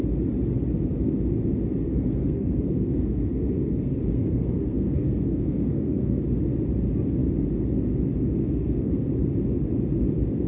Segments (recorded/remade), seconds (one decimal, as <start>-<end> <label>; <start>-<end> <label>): 0.0-1.8 recorded; 1.8-6.2 remade; 6.2-8.4 recorded; 8.4-9.0 remade; 9.0-10.5 recorded